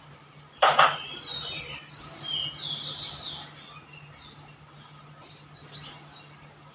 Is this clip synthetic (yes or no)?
yes